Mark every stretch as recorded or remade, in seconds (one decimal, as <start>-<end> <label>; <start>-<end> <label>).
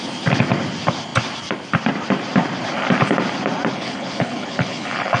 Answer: 0.0-3.7 recorded; 3.7-5.2 remade